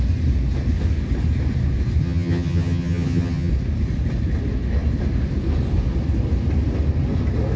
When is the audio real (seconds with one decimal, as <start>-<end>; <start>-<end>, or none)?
0.0-2.0; 3.5-7.6